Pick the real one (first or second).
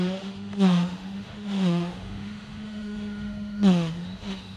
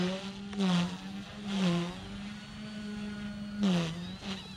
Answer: second